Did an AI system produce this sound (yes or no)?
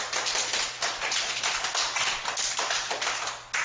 no